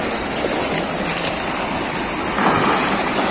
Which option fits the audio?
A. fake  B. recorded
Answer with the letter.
B